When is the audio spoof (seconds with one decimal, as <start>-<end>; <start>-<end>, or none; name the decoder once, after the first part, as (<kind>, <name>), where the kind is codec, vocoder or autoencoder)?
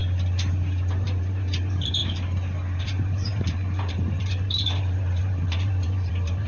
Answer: 0.9-2.0 (vocoder, BigVGAN v2); 2.8-6.5